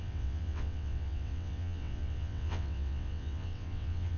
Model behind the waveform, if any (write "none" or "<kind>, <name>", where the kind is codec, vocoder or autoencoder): vocoder, WaveNeXt